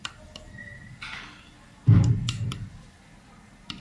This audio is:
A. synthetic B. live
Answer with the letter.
B